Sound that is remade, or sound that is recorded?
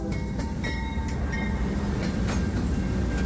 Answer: recorded